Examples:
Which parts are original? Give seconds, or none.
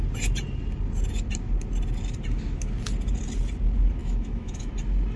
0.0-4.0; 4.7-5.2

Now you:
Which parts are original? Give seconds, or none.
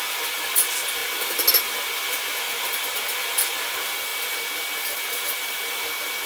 0.0-6.3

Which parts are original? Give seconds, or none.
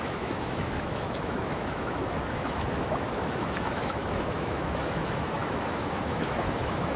none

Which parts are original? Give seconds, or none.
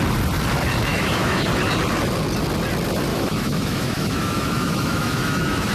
0.0-0.9; 1.5-3.1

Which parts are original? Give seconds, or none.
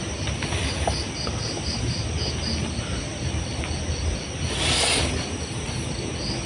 0.0-6.5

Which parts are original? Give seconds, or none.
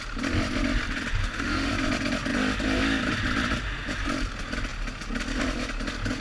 0.0-1.2; 1.7-6.2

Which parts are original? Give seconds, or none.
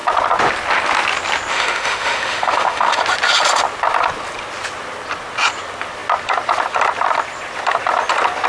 0.0-1.5; 3.0-8.5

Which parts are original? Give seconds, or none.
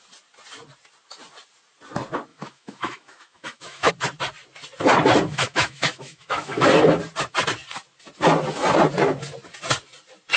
0.0-2.3; 3.9-5.3; 6.7-10.4